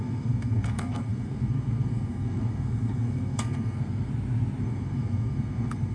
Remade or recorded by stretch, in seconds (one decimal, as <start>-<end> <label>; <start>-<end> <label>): 0.0-4.1 remade; 4.1-4.6 recorded; 4.6-5.9 remade